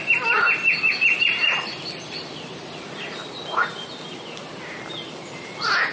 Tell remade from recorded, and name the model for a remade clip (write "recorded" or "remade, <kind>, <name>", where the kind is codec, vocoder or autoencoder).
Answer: recorded